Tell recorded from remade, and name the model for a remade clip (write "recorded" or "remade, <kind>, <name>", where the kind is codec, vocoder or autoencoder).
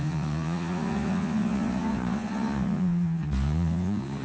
remade, vocoder, Vocos